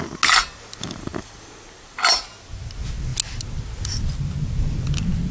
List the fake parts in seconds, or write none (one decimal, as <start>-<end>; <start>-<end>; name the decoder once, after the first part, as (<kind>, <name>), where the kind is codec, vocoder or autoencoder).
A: none